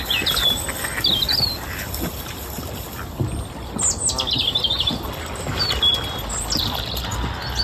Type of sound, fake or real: real